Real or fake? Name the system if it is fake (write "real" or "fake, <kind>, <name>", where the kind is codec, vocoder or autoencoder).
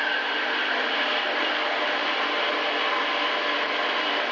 fake, vocoder, BigVGAN v2